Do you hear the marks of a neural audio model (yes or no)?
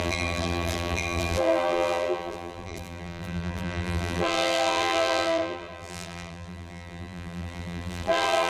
yes